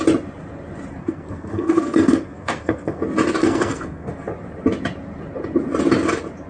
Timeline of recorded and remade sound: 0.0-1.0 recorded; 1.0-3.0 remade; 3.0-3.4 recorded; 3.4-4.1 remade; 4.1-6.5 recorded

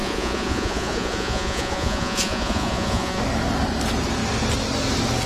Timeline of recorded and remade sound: 0.0-3.2 remade; 3.2-5.3 recorded

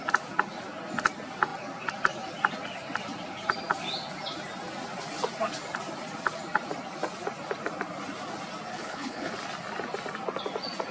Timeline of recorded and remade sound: 0.0-8.7 recorded; 8.7-9.3 remade; 9.3-10.9 recorded

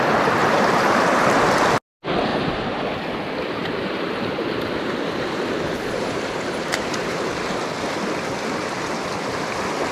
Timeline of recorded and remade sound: 0.0-0.4 recorded; 0.4-1.6 remade; 1.6-2.3 recorded; 2.3-2.8 remade; 2.8-3.6 recorded; 3.6-7.6 remade; 7.6-9.9 recorded